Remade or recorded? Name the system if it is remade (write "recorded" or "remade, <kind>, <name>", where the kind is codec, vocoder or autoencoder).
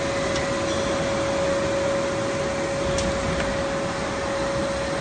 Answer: recorded